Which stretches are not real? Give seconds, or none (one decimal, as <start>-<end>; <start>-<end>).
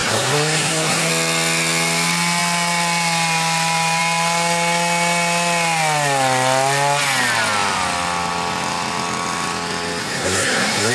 0.0-1.1; 10.0-10.9